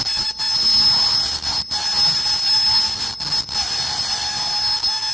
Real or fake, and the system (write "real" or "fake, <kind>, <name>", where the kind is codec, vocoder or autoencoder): real